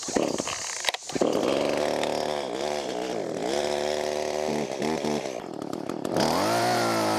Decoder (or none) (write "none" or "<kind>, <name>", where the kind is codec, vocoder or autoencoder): none